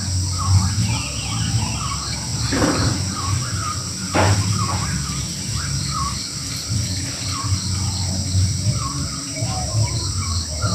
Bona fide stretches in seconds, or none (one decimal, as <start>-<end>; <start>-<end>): 0.0-2.3; 3.1-8.9; 10.0-10.7